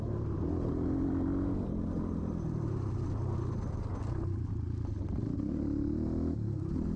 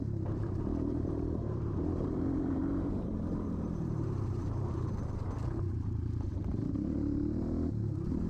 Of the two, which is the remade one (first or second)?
second